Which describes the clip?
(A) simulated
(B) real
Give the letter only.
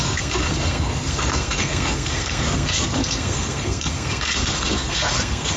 A